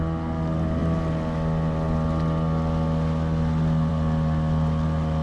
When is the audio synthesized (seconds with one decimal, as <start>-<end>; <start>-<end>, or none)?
none